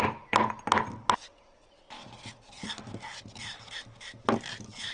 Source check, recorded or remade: recorded